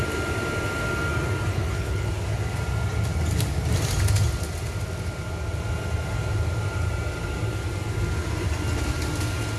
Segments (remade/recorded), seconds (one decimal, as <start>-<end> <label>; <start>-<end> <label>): 0.0-1.5 recorded; 1.5-2.1 remade; 2.1-9.6 recorded